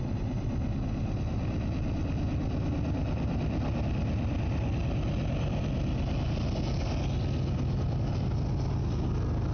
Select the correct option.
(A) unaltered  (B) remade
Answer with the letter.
A